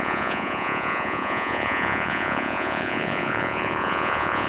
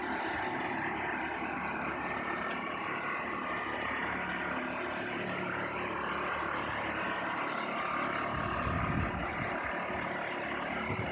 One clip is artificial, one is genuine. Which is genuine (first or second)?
second